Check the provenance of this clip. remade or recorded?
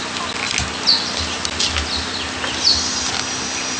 recorded